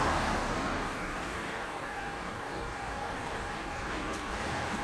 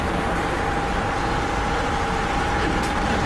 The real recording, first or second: second